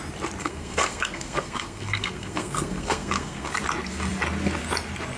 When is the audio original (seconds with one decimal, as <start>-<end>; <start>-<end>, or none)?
0.0-0.4; 3.5-5.2

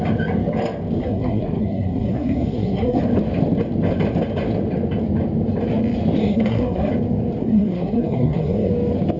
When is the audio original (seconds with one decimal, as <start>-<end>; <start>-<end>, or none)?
0.0-1.0; 3.0-6.2; 6.9-7.4; 8.7-9.2

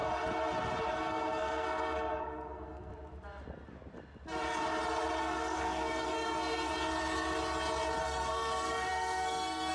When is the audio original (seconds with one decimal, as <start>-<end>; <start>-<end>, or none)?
0.0-0.9; 2.9-5.2; 6.7-8.0

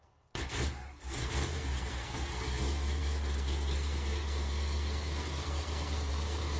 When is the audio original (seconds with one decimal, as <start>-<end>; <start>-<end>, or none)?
none

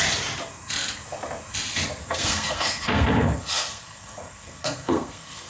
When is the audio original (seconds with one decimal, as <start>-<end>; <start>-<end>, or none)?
0.0-2.0

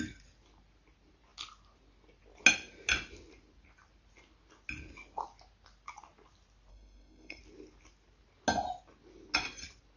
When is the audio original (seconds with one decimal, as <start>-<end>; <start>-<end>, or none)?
0.0-6.7; 7.4-10.0